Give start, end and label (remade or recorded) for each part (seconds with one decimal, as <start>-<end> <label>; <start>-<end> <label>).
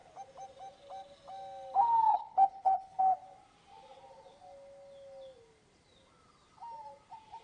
0.0-2.1 recorded; 2.1-3.0 remade; 3.0-7.4 recorded